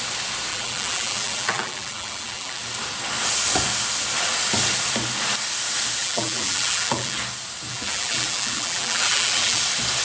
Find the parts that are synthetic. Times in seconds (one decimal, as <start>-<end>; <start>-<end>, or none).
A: 0.5-2.6; 6.0-7.2; 7.7-9.6